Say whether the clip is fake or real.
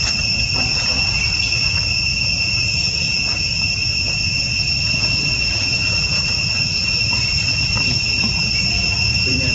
fake